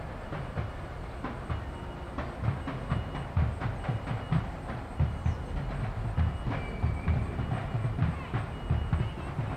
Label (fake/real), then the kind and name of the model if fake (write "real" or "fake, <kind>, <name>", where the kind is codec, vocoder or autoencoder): real